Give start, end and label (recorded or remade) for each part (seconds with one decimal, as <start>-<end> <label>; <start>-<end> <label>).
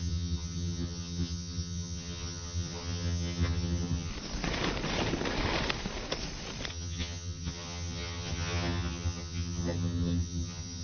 0.0-4.1 remade; 4.1-6.7 recorded; 6.7-10.8 remade